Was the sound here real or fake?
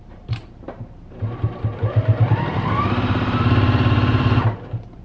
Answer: fake